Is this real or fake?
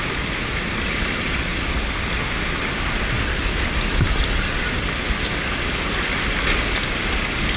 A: real